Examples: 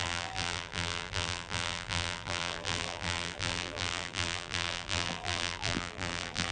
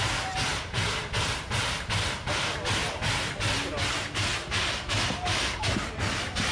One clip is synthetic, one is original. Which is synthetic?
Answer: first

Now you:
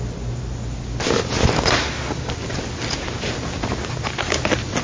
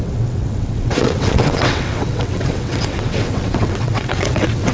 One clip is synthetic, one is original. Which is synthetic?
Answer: second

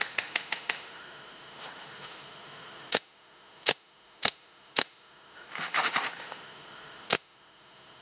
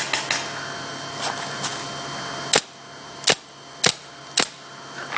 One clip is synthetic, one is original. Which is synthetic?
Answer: first